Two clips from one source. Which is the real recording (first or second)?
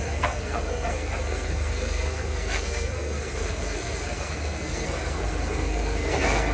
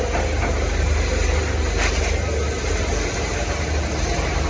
second